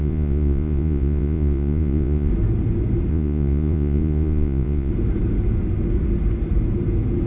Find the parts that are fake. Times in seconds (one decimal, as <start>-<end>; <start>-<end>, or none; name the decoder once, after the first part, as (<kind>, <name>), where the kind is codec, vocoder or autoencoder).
0.0-2.3 (vocoder, Vocos); 3.1-4.9